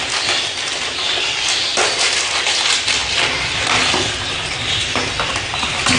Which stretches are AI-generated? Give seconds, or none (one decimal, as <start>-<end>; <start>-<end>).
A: 0.0-1.7; 2.4-6.0